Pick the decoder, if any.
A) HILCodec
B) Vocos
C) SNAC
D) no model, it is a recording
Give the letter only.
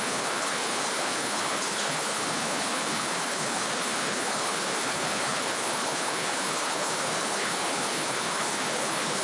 A